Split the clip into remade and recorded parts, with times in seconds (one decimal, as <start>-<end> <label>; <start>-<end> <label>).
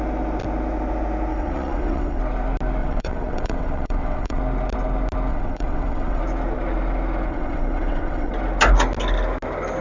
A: 0.0-1.3 recorded; 1.3-2.2 remade; 2.2-2.8 recorded; 2.8-4.4 remade; 4.4-5.3 recorded; 5.3-6.2 remade; 6.2-7.3 recorded; 7.3-8.3 remade; 8.3-9.8 recorded